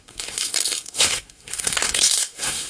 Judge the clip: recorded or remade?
remade